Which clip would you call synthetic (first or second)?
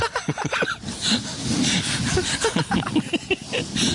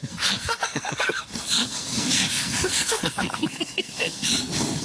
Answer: second